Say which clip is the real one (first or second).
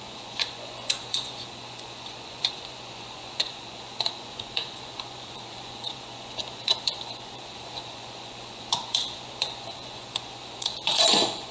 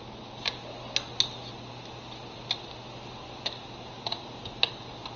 second